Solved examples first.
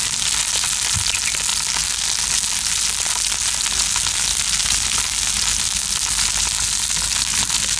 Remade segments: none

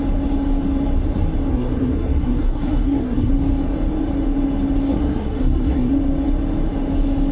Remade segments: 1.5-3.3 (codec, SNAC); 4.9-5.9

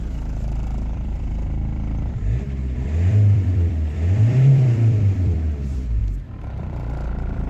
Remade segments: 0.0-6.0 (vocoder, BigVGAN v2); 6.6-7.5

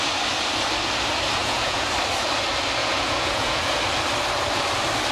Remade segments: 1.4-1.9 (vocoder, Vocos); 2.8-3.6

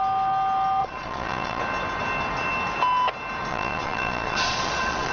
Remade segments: 0.8-1.6 (vocoder, Vocos); 3.5-5.1